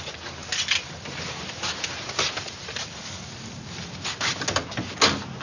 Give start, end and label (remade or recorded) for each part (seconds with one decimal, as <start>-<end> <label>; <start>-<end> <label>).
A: 0.0-5.4 recorded